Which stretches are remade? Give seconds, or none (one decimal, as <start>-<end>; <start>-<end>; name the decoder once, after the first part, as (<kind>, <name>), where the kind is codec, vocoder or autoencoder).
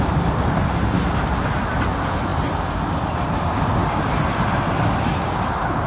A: none